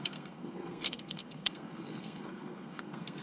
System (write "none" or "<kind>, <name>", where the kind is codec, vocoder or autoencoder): codec, SNAC